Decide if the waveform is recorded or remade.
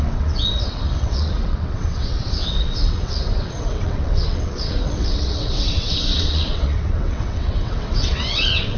remade